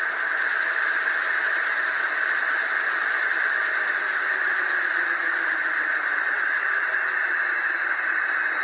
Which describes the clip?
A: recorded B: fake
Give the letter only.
A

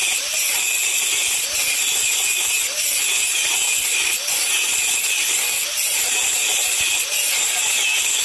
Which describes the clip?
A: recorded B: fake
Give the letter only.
A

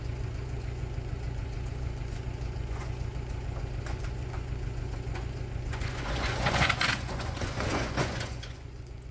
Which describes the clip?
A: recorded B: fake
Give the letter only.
B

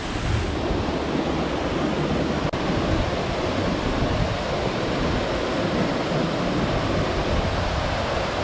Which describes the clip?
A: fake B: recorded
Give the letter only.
A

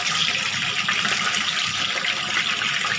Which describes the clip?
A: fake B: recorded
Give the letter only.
B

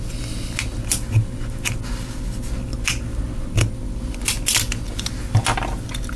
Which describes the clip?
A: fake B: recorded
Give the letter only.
B